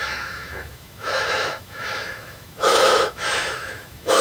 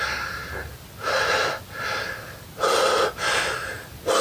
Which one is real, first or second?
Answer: second